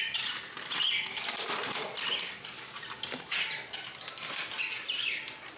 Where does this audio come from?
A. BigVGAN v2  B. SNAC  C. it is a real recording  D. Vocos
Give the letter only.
C